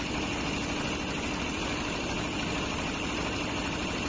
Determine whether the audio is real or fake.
real